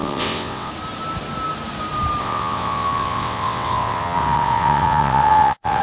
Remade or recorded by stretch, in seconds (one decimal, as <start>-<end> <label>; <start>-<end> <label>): 0.0-0.7 remade; 0.7-2.2 recorded; 2.2-5.8 remade

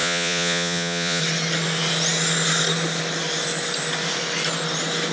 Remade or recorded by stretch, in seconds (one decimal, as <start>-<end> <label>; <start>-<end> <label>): 0.0-1.2 remade; 1.2-5.1 recorded

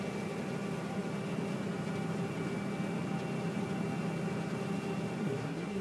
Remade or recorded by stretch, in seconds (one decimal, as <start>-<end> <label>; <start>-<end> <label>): 0.0-5.2 recorded; 5.2-5.8 remade

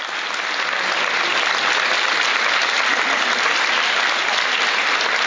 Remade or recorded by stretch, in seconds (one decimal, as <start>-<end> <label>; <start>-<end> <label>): 0.0-5.3 recorded

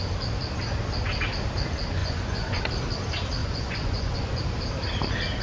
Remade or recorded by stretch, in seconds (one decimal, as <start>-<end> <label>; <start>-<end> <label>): 0.0-2.0 recorded; 2.0-2.6 remade; 2.6-3.4 recorded; 3.4-4.4 remade; 4.4-5.4 recorded